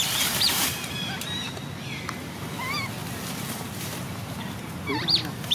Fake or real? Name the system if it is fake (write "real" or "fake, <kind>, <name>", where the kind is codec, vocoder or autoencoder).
real